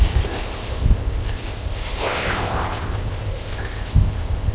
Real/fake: fake